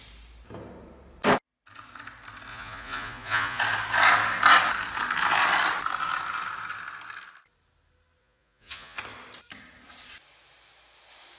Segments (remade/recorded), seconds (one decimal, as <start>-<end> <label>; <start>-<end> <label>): 0.0-2.5 recorded; 2.5-3.6 remade; 3.6-8.2 recorded; 8.2-9.0 remade; 9.0-11.4 recorded